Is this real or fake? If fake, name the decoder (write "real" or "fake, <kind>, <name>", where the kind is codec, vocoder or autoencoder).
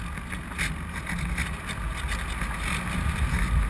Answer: real